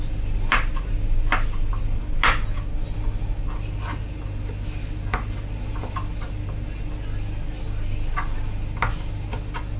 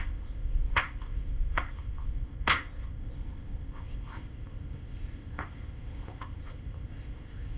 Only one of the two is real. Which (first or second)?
first